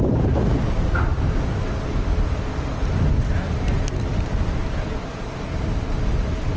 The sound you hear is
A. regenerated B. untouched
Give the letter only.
B